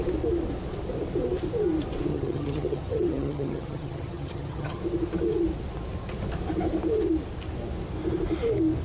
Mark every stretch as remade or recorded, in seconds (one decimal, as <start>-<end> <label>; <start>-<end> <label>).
0.0-2.1 recorded; 2.1-4.8 remade; 4.8-8.8 recorded